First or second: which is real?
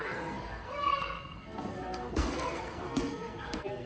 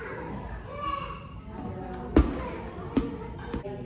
second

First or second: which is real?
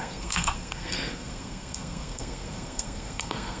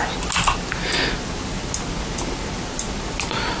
second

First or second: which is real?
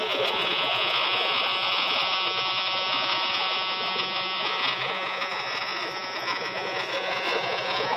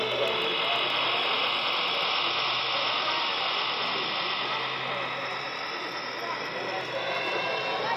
second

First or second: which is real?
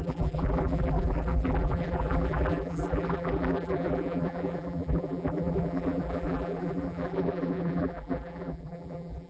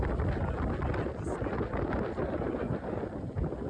second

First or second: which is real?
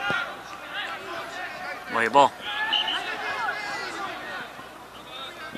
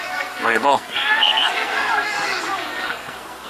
first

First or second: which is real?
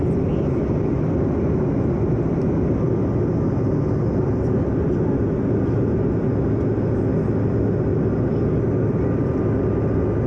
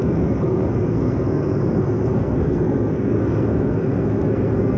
first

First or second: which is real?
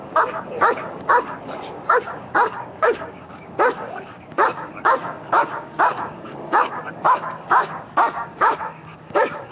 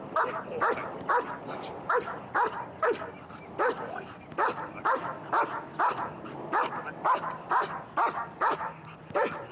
second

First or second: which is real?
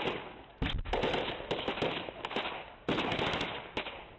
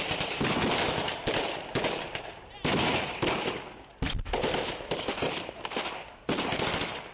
first